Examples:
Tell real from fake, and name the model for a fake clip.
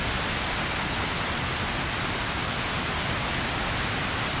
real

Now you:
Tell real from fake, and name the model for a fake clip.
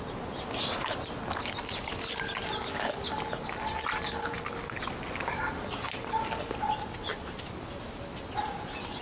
real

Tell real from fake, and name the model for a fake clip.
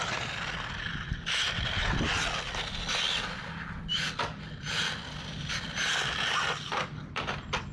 real